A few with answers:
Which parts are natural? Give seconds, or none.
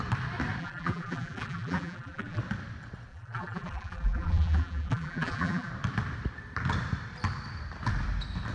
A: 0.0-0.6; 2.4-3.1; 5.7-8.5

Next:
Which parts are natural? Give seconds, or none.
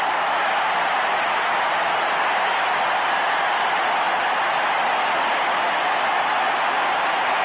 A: 0.0-0.4; 4.8-5.5